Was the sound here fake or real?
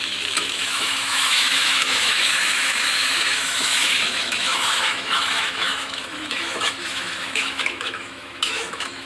fake